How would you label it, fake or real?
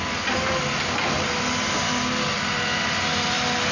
real